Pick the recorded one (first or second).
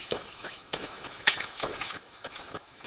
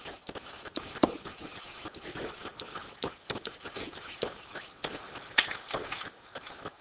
second